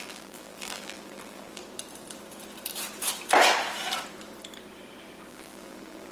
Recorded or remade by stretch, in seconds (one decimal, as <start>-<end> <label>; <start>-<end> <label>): 0.0-1.6 remade; 1.6-5.3 recorded; 5.3-6.1 remade